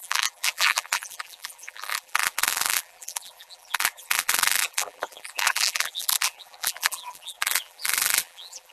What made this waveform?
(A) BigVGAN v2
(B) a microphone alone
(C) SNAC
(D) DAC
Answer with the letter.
A